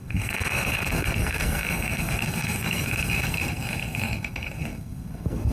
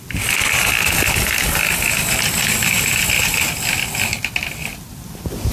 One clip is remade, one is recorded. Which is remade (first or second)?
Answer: first